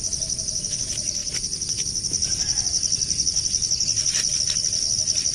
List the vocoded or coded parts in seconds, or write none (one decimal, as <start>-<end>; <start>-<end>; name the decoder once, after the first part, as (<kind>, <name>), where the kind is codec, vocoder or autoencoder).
none